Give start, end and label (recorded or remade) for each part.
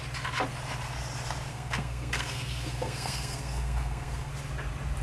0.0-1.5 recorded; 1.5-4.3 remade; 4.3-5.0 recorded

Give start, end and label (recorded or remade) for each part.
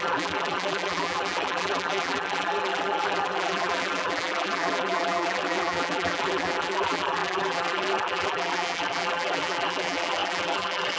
0.0-11.0 remade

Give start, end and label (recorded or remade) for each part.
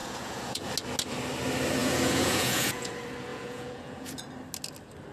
0.0-0.7 remade; 0.7-1.8 recorded; 1.8-2.9 remade; 2.9-3.3 recorded; 3.3-4.2 remade; 4.2-5.1 recorded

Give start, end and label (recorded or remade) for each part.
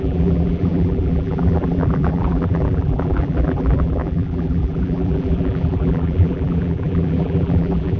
0.0-8.0 remade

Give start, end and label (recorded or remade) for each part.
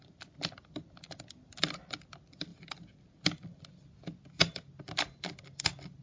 0.0-6.0 recorded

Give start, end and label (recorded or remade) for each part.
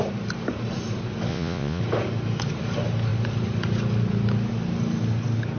0.0-1.3 recorded; 1.3-1.8 remade; 1.8-5.6 recorded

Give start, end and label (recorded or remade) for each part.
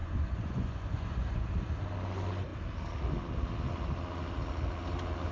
0.0-1.5 remade; 1.5-5.3 recorded